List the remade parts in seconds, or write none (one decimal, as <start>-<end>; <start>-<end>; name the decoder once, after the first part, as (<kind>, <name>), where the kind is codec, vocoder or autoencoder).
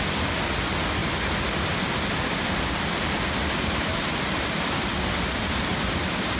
none